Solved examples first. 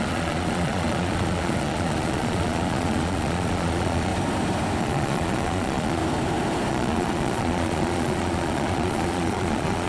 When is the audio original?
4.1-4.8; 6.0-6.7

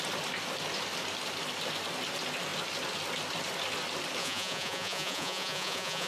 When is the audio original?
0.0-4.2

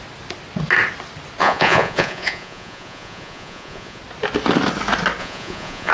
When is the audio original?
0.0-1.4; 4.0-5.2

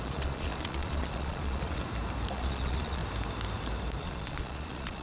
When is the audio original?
1.8-2.3; 3.0-4.0